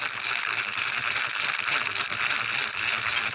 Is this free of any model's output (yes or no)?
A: yes